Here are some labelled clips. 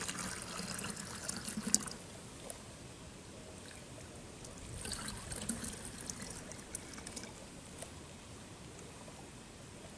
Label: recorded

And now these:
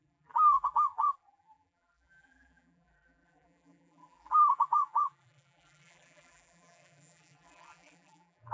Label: remade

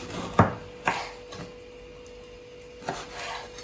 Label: recorded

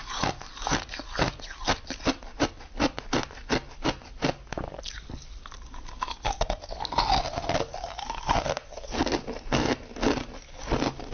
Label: recorded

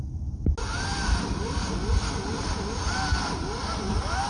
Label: recorded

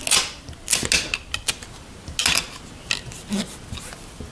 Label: recorded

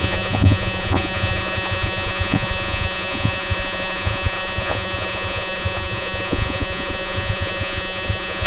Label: remade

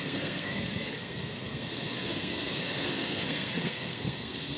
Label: remade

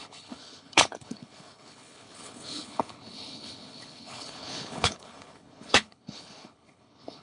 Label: remade